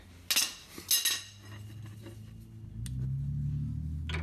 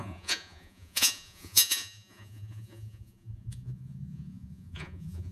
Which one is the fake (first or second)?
second